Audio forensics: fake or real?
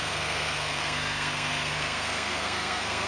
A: fake